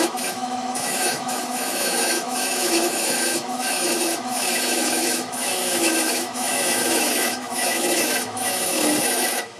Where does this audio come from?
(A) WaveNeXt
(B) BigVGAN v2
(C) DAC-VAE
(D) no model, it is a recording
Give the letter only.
C